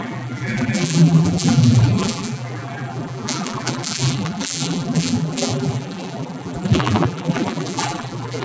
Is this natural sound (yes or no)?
no